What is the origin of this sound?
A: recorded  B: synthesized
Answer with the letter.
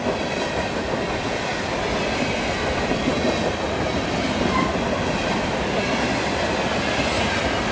A